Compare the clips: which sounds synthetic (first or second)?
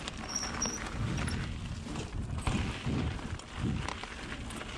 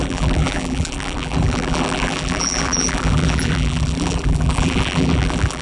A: second